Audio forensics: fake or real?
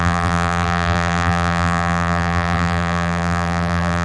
fake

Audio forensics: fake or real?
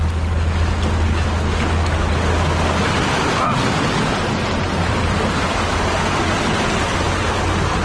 real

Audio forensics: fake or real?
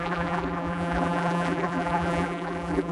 fake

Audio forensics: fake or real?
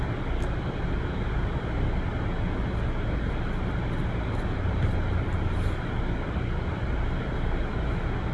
real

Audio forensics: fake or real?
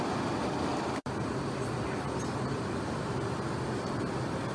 real